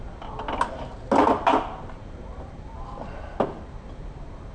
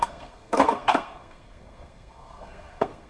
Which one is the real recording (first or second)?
first